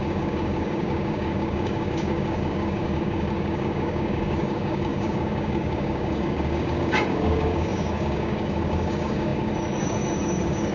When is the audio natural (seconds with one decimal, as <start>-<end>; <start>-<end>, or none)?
none

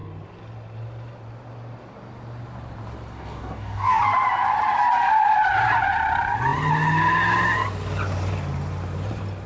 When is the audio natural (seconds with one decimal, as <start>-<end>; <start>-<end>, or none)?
0.0-3.1; 4.0-9.5

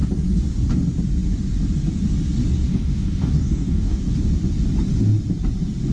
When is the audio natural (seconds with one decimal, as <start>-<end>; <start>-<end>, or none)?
0.0-2.7; 4.0-5.9

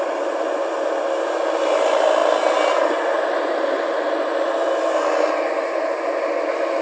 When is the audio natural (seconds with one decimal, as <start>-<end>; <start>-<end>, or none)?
0.0-6.8

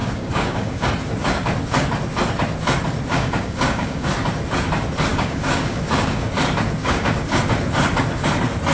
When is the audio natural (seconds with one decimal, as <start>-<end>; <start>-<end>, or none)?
0.9-3.1; 4.1-5.1; 6.3-6.8; 7.4-8.7

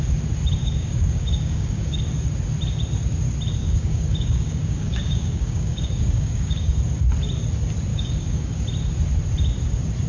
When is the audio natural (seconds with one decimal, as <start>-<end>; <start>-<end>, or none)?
0.0-0.6; 2.0-3.6; 6.8-7.9; 8.6-10.1

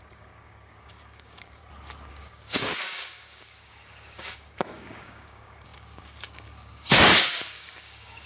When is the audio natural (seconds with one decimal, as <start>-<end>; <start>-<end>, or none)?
1.6-2.1

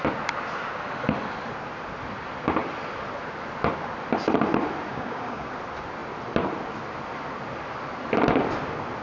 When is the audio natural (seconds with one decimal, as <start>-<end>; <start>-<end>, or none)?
0.0-4.9; 5.5-9.0